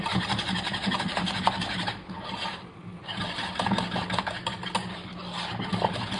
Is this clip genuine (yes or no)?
yes